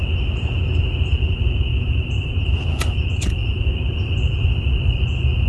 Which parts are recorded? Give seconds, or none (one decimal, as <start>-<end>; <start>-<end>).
0.0-1.7; 2.3-3.4; 5.0-5.5